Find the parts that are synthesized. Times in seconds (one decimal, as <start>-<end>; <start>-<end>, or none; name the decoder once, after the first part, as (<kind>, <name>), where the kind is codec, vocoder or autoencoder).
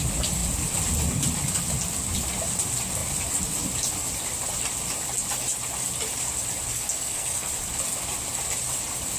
6.7-7.5 (codec, SNAC)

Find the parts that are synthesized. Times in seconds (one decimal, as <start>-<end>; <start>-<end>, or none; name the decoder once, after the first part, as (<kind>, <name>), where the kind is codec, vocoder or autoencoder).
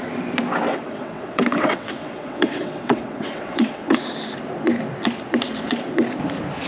0.7-4.0 (vocoder, WaveNeXt)